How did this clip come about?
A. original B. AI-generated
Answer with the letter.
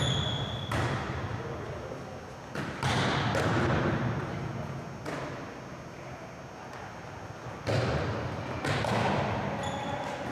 A